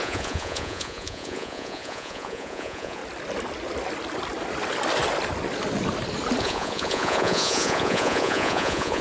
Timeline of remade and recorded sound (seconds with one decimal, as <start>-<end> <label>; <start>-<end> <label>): 0.0-3.0 remade; 3.0-6.4 recorded; 6.4-9.0 remade